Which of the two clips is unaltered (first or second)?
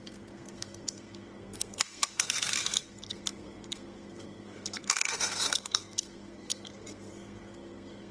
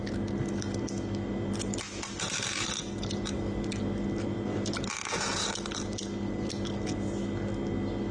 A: second